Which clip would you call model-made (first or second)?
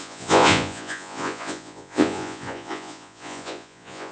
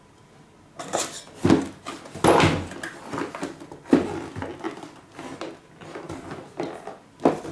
first